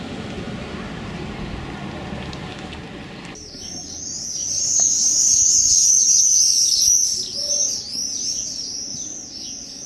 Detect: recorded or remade recorded